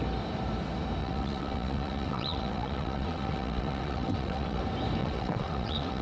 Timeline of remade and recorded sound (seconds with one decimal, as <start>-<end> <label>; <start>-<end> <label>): 0.0-1.0 recorded; 1.0-4.6 remade; 4.6-5.0 recorded; 5.0-6.0 remade